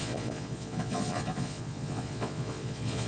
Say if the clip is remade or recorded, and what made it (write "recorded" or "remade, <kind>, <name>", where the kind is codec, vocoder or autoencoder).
remade, vocoder, Vocos